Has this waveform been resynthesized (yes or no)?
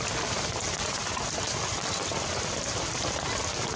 no